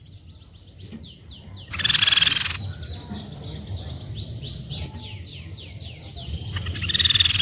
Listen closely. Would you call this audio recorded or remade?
recorded